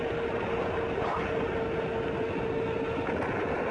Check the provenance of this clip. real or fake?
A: real